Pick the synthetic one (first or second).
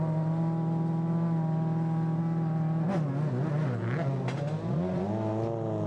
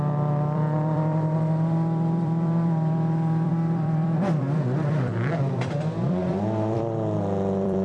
second